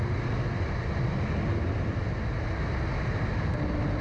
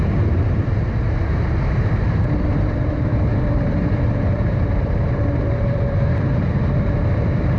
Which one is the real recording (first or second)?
first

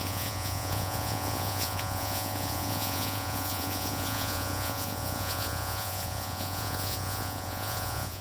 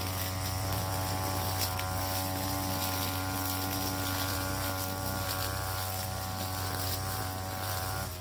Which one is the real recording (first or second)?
second